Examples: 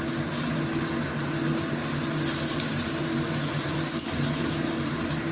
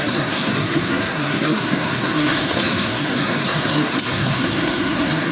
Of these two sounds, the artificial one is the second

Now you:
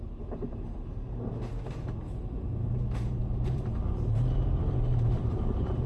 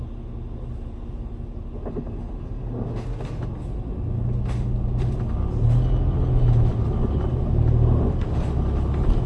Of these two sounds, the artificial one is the first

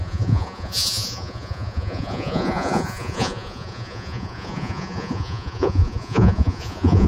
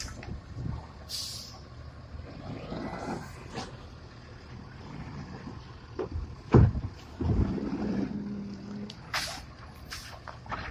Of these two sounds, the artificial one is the first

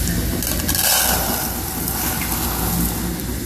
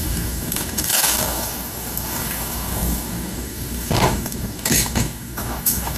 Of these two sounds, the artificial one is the second